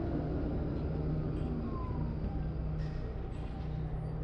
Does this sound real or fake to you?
real